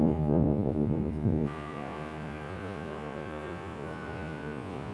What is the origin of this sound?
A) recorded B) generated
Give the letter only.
B